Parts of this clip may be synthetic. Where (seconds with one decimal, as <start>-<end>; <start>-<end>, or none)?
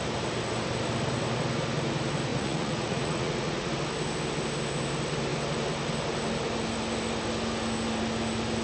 2.3-3.7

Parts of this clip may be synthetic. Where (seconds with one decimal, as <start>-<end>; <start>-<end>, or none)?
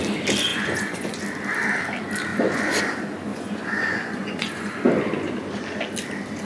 0.5-1.2; 2.3-2.8; 3.3-4.8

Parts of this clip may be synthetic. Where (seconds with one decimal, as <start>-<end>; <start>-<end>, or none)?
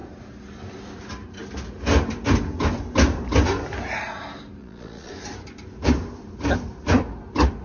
4.6-5.1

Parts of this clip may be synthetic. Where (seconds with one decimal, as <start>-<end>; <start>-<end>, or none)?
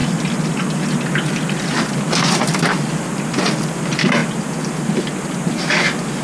none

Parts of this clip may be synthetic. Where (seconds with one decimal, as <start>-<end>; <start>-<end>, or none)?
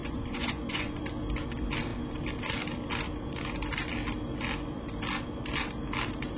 0.0-1.0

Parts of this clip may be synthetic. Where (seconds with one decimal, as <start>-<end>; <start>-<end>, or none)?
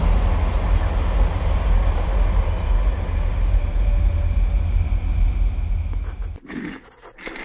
none